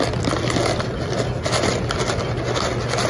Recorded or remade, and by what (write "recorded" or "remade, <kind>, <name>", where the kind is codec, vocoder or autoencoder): recorded